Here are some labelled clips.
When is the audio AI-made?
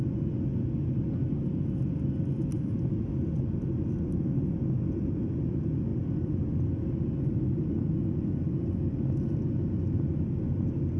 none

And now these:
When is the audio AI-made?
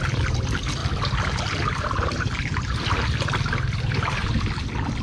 none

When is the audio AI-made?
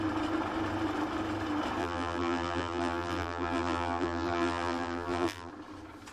1.8-5.5 (vocoder, BigVGAN v2)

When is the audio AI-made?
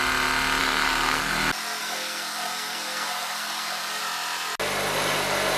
0.6-1.3 (codec, SNAC); 1.8-4.0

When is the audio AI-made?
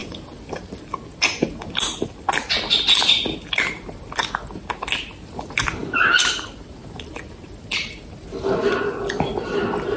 none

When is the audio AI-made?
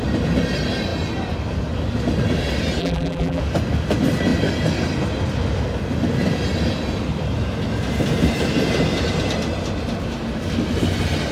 2.8-3.4 (vocoder, BigVGAN v2)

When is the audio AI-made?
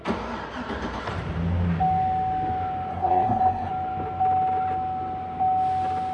2.9-3.7 (codec, SNAC)